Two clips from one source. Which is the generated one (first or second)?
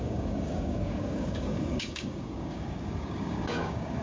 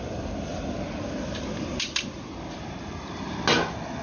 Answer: first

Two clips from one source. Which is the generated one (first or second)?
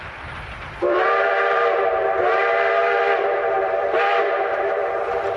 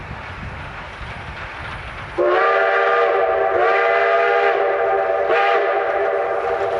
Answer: first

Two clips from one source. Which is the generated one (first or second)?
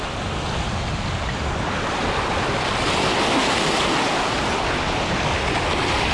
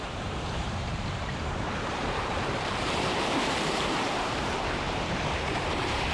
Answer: second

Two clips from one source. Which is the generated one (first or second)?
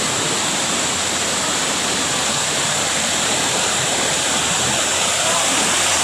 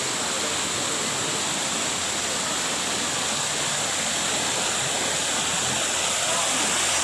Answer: first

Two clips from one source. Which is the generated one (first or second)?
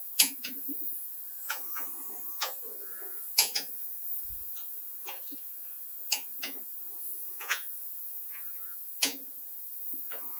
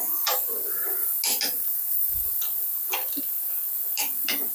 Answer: first